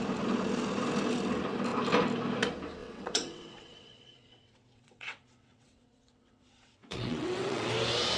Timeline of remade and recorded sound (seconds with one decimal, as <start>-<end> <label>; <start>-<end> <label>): 0.0-2.8 recorded; 2.8-7.7 remade; 7.7-8.2 recorded